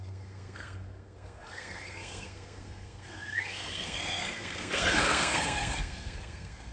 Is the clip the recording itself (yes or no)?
no